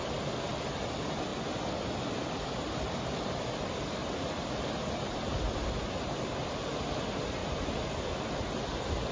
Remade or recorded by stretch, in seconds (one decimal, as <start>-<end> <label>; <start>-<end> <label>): 0.0-9.1 recorded

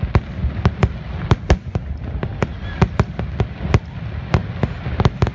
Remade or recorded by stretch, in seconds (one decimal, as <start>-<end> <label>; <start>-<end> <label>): 0.0-5.3 recorded

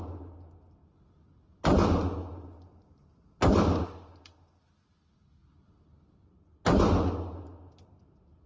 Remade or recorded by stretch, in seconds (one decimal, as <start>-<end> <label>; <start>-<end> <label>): 0.0-8.5 recorded

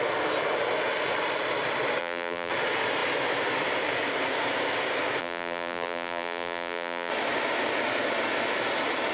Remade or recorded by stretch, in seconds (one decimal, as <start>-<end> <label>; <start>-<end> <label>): 0.0-2.0 recorded; 2.0-2.5 remade; 2.5-5.2 recorded; 5.2-7.1 remade; 7.1-9.1 recorded